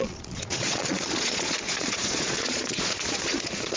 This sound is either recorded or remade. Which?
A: remade